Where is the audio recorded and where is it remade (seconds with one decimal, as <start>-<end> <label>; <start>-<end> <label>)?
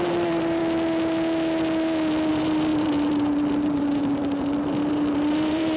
0.0-0.6 remade; 0.6-2.3 recorded; 2.3-5.8 remade